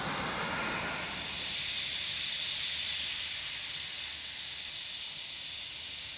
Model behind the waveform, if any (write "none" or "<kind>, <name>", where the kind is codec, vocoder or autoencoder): none